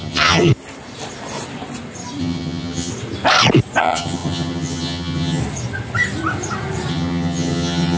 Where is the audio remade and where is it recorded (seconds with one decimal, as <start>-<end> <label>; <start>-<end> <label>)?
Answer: 0.0-0.5 remade; 0.5-2.2 recorded; 2.2-2.9 remade; 2.9-3.8 recorded; 3.8-5.4 remade; 5.4-6.9 recorded; 6.9-8.0 remade